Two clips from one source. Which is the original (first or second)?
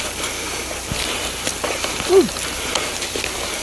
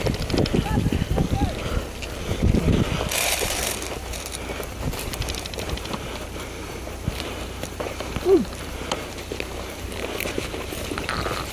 first